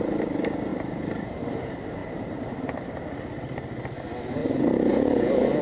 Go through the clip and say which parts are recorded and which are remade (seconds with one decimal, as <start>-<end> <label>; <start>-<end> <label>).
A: 0.0-0.7 recorded; 0.7-1.4 remade; 1.4-2.0 recorded; 2.0-2.8 remade; 2.8-5.6 recorded